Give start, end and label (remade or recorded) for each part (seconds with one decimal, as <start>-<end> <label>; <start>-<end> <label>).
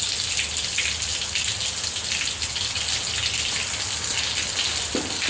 0.0-5.3 recorded